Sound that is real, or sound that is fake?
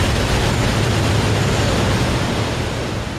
real